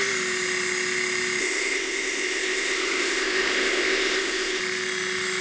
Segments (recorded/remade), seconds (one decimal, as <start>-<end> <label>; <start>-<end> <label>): 0.0-1.4 recorded; 1.4-4.6 remade; 4.6-5.4 recorded